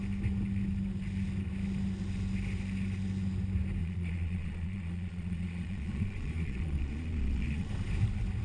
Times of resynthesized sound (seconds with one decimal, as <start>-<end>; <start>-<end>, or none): 3.8-7.7